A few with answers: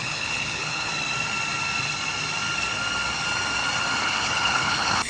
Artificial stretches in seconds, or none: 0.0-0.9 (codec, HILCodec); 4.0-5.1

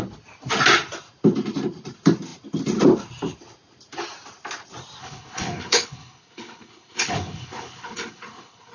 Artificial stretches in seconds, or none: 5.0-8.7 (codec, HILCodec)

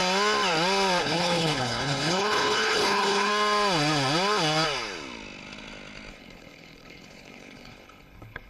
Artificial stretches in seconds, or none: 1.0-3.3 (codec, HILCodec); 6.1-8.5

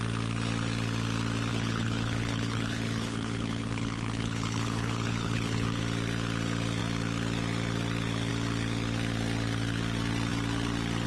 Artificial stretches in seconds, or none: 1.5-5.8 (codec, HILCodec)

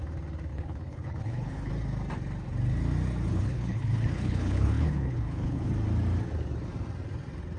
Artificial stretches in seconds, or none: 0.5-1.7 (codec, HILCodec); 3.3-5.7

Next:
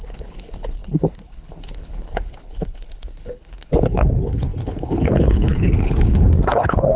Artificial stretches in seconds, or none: 0.0-7.0 (codec, HILCodec)

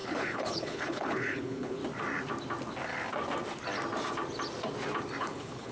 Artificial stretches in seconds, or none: 0.0-1.8 (codec, HILCodec); 5.2-5.7